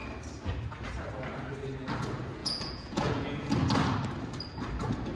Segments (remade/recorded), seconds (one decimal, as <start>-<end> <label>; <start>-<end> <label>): 0.0-2.4 recorded; 2.4-3.5 remade; 3.5-5.2 recorded